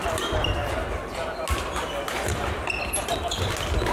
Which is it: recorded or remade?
recorded